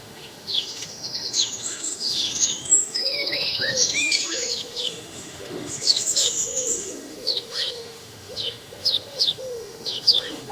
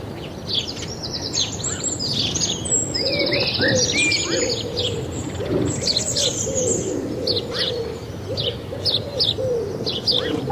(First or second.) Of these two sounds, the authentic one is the second